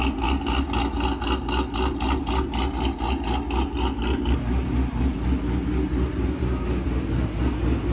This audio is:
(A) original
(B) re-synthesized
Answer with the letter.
A